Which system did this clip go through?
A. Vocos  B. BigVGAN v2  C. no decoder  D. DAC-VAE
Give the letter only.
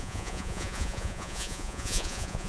A